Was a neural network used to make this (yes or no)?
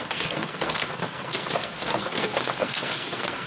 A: yes